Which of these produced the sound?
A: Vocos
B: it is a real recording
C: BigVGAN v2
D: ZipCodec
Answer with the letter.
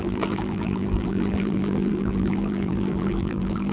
C